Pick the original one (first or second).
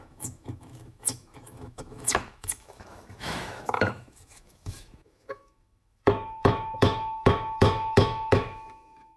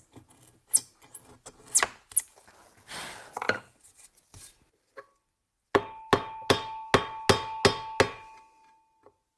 second